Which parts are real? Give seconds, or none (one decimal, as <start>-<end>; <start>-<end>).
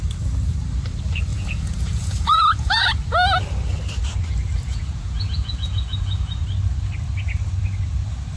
0.0-1.3; 3.0-4.7; 6.4-8.4